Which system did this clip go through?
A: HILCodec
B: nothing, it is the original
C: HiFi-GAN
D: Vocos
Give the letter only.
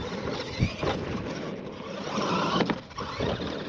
B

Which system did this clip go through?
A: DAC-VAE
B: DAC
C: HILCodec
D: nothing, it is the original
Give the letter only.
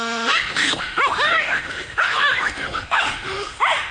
A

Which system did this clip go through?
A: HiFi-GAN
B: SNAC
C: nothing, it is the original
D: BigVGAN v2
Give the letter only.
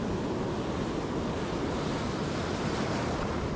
C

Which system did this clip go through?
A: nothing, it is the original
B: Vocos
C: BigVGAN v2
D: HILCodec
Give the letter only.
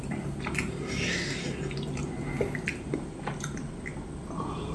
A